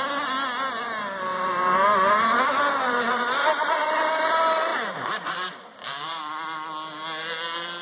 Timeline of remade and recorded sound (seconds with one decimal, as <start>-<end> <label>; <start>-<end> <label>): 0.0-1.3 recorded; 1.3-3.9 remade; 3.9-4.7 recorded; 4.7-6.2 remade; 6.2-7.8 recorded